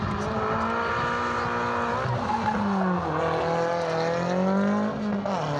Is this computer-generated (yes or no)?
no